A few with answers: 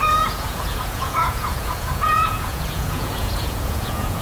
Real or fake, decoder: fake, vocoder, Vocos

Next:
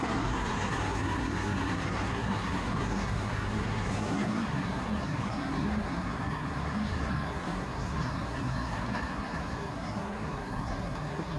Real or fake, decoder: fake, codec, SNAC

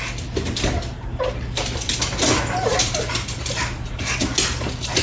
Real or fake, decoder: real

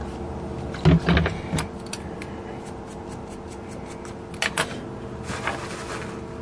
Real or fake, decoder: real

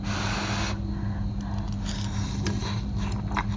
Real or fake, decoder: real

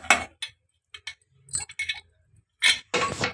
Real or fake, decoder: real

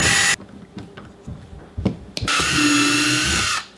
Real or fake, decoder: real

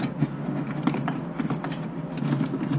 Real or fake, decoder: real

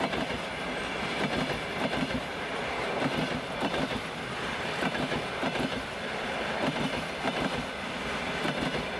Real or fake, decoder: fake, vocoder, BigVGAN v2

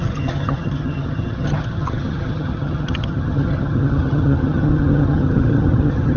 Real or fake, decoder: fake, vocoder, HiFi-GAN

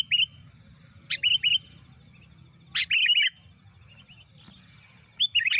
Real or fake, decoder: real